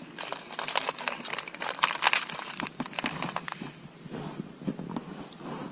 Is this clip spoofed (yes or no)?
no